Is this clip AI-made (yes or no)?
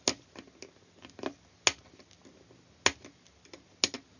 no